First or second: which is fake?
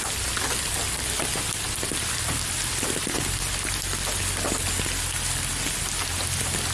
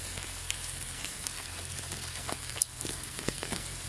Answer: second